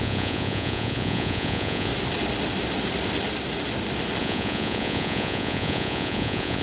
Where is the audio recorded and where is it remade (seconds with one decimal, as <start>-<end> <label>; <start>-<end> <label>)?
0.0-1.9 remade; 1.9-4.2 recorded; 4.2-6.6 remade